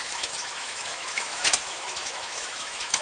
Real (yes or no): no